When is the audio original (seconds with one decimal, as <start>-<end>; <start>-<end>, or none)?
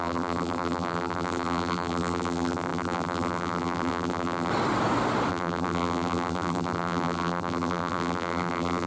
4.5-5.3